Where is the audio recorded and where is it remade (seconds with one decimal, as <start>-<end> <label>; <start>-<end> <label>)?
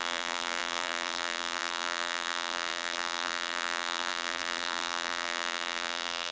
0.0-6.3 remade